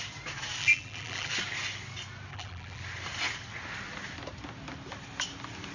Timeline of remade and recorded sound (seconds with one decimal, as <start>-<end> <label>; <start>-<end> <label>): 0.0-0.6 recorded; 0.6-1.3 remade; 1.3-2.3 recorded; 2.3-2.8 remade; 2.8-5.7 recorded